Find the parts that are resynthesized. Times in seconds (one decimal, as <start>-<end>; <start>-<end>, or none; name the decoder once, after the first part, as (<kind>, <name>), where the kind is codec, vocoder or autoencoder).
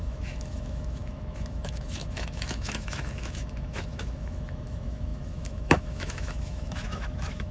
0.0-7.5 (autoencoder, DAC-VAE)